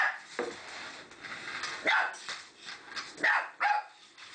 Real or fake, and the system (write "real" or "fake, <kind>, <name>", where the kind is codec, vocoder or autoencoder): real